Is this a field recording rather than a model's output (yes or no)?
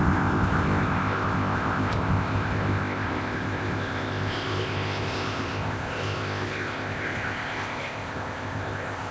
no